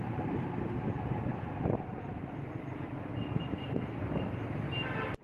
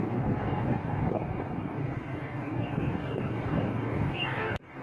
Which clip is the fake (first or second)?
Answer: second